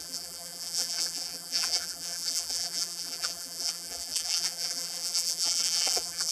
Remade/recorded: remade